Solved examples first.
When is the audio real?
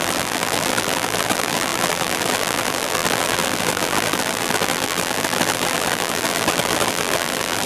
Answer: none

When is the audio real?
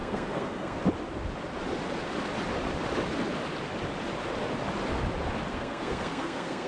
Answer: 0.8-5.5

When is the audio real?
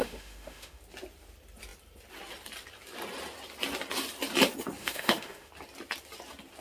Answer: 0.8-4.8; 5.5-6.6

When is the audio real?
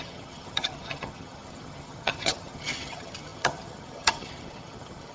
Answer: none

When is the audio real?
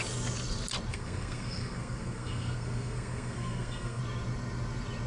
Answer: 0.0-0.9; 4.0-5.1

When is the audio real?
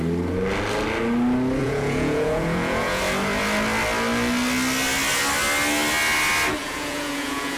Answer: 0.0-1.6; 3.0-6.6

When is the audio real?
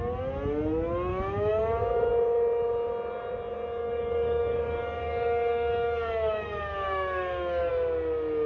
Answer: 0.0-1.1; 2.1-3.8; 7.7-8.5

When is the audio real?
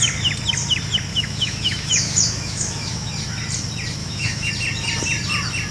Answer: 0.0-1.1; 3.1-4.0; 4.5-5.7